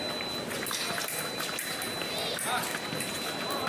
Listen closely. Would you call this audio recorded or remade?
recorded